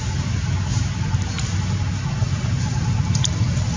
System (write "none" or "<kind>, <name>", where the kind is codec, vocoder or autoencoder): none